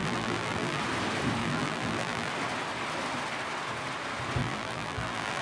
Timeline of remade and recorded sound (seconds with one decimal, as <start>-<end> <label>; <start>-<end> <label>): 0.0-0.8 remade; 0.8-1.4 recorded; 1.4-2.3 remade; 2.3-4.4 recorded; 4.4-5.4 remade